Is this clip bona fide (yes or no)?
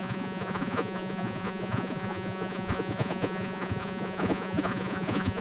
no